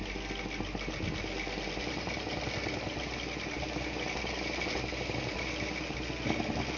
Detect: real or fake real